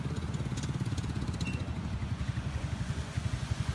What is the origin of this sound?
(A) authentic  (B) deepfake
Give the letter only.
B